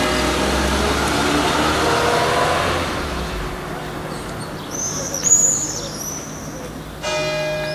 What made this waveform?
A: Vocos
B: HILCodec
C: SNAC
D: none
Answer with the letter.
D